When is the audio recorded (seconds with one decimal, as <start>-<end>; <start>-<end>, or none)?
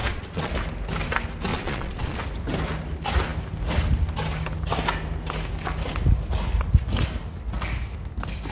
0.5-1.5; 2.2-8.5